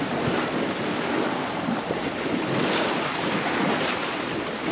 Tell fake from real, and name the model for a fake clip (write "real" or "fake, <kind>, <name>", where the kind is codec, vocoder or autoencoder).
real